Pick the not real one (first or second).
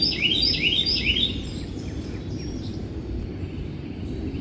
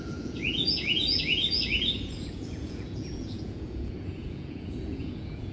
second